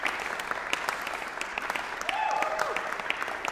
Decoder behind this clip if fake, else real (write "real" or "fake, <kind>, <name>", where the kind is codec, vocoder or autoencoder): real